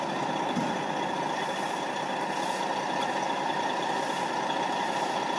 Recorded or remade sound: recorded